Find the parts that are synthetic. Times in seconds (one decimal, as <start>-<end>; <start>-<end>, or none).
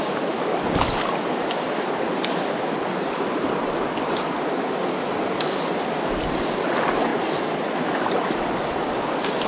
none